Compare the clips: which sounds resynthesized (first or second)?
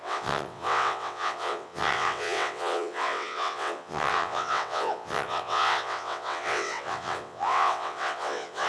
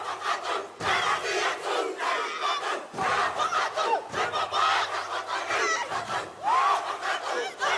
first